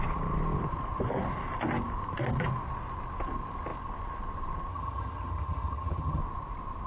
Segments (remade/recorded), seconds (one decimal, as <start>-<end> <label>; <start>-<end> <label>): 0.0-4.7 recorded; 4.7-6.2 remade; 6.2-6.9 recorded